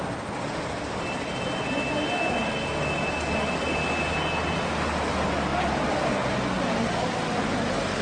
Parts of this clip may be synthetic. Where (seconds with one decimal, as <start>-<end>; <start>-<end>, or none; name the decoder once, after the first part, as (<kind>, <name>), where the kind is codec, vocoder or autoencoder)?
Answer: none